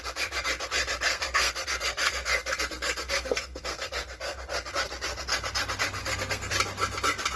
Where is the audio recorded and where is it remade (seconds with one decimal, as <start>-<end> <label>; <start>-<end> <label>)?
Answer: 0.0-1.1 recorded; 1.1-4.7 remade; 4.7-6.0 recorded; 6.0-6.5 remade; 6.5-7.4 recorded